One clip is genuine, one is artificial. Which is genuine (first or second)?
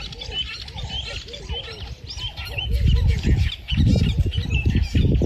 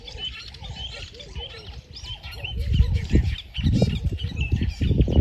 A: first